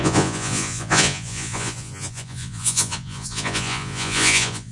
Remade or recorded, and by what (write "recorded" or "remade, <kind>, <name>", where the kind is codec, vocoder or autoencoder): remade, vocoder, Vocos